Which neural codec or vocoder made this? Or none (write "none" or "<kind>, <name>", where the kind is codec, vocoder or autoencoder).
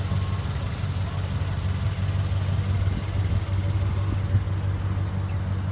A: none